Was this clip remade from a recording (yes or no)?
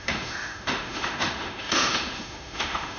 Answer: yes